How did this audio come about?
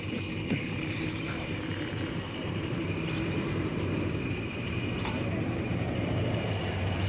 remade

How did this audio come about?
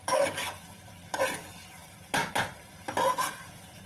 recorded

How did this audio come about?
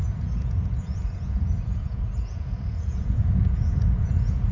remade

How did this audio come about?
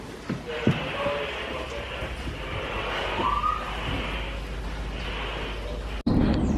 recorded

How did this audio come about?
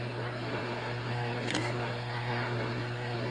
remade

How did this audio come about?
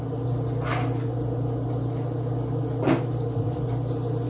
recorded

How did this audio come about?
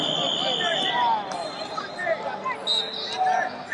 recorded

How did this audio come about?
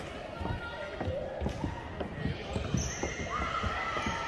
recorded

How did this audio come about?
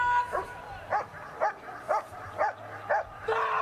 recorded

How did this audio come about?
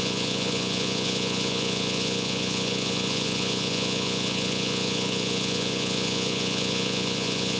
remade